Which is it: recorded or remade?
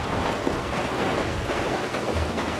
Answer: remade